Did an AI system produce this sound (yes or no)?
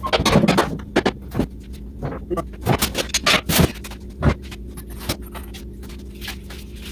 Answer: no